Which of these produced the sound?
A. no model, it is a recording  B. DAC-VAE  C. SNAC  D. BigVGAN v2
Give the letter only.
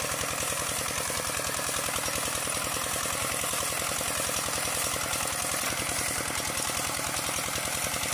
A